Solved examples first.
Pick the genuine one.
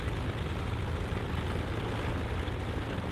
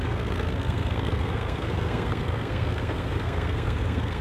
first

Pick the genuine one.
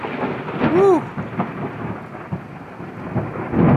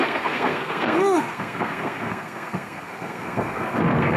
first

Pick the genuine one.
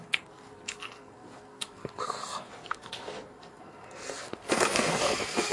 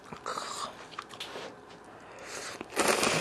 second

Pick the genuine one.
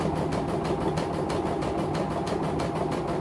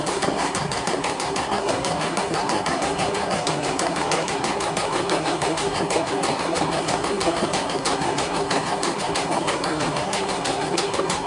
first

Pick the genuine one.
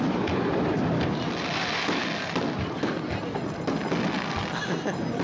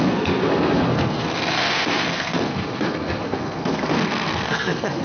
first